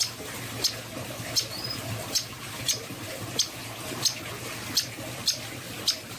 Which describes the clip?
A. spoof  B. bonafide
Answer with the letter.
B